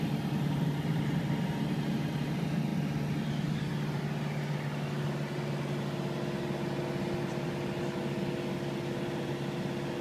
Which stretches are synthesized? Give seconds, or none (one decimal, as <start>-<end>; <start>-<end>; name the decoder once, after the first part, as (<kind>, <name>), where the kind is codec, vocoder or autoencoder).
none